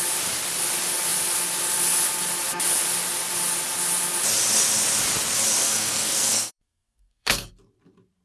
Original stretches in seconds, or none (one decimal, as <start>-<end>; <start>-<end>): 0.0-5.6; 7.5-8.2